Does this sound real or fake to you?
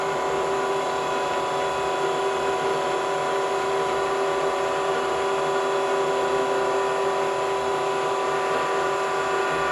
real